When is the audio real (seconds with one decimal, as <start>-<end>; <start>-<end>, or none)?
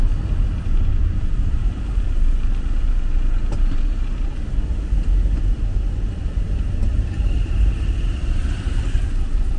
0.0-1.0; 4.4-6.9; 7.9-8.4; 9.0-9.6